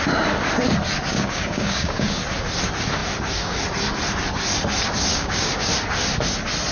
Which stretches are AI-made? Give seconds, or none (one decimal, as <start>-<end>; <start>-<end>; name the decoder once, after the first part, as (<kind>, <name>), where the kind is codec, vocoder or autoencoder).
1.1-2.2 (codec, DAC); 5.1-5.7